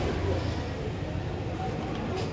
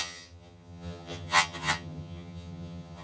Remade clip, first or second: second